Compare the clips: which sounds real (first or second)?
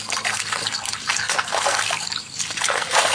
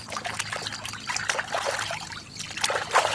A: second